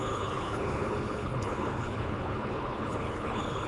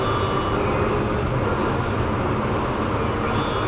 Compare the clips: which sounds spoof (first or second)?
first